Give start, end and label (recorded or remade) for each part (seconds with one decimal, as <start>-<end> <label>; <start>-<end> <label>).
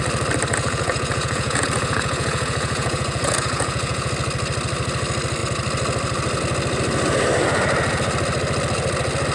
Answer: 0.0-0.5 recorded; 0.5-4.1 remade; 4.1-9.3 recorded